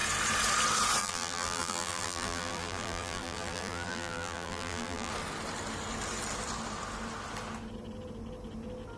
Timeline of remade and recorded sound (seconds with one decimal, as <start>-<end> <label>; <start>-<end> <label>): 0.0-1.0 recorded; 1.0-5.1 remade; 5.1-9.0 recorded